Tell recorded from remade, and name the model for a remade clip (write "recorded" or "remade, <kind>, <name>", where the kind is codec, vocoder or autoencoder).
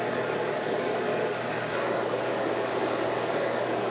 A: remade, codec, DAC